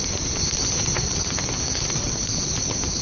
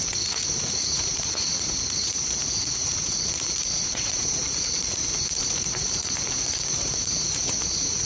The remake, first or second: second